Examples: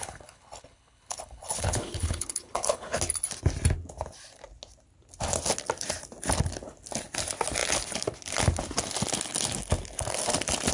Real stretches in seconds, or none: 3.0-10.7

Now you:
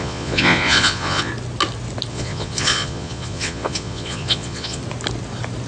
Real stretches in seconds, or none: 1.3-2.1; 4.8-5.7

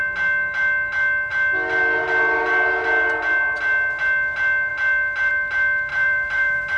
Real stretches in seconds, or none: 0.0-5.9